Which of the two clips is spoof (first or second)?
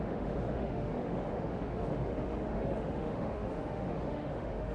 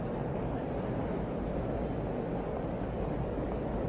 first